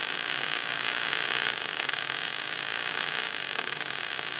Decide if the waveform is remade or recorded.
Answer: remade